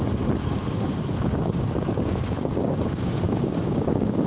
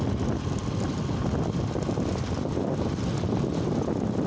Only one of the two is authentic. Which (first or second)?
second